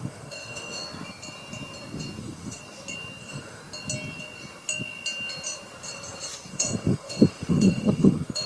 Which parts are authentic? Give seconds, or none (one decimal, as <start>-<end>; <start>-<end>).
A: 0.8-2.2; 2.6-3.2; 3.6-6.5